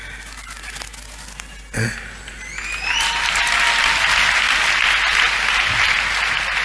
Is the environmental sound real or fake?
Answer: real